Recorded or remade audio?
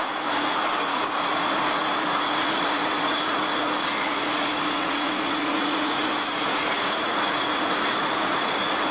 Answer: remade